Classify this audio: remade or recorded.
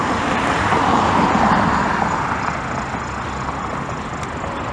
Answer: recorded